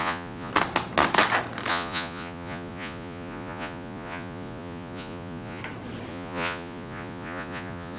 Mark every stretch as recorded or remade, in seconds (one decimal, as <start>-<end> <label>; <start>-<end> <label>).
0.0-0.5 remade; 0.5-1.7 recorded; 1.7-5.6 remade; 5.6-6.1 recorded; 6.1-8.0 remade